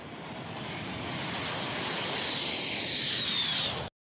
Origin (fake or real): real